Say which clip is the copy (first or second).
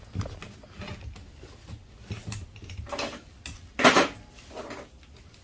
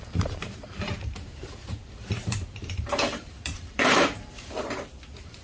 second